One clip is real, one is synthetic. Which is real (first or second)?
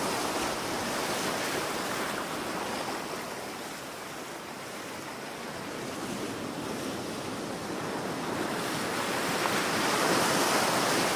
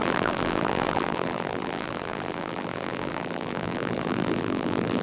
first